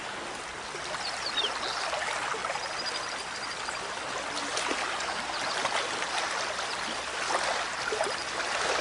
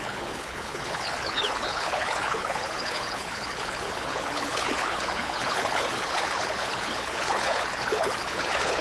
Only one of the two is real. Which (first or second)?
first